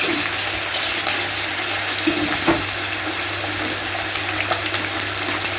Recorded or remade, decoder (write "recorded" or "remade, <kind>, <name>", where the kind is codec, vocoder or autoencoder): recorded